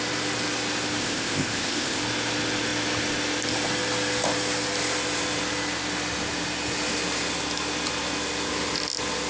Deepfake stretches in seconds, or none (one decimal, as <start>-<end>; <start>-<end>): 1.0-2.0

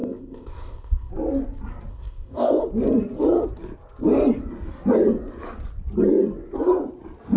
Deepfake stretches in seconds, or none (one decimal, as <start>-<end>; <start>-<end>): 0.0-1.1; 1.9-2.6

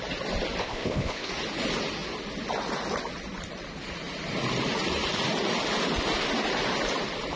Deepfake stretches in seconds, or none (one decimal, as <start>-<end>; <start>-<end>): 0.6-1.3

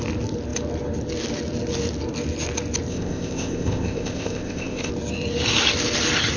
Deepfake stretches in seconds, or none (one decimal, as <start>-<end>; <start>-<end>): 2.9-4.9

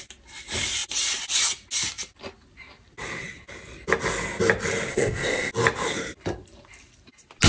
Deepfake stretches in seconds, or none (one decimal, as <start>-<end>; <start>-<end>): 4.9-5.5

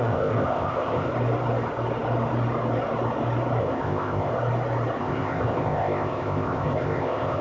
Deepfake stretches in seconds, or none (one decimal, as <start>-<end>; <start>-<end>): 0.0-1.1; 3.6-4.3; 5.0-7.4

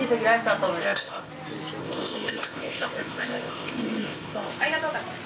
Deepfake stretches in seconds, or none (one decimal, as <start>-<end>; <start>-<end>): 0.8-1.3; 1.8-4.5